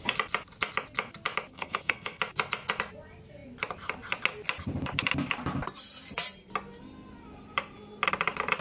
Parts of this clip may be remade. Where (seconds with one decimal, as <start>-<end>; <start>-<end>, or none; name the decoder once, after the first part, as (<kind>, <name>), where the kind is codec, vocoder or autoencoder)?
1.5-2.2 (codec, SNAC)